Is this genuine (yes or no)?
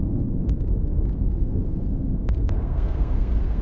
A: no